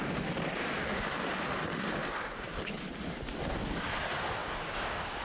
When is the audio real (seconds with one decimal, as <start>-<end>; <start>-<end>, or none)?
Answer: 0.0-4.4